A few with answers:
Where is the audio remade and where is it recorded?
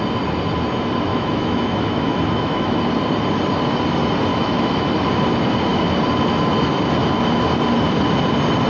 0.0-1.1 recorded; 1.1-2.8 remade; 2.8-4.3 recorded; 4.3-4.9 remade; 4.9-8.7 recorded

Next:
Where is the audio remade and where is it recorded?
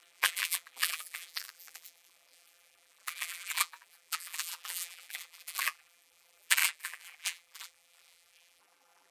0.0-9.1 remade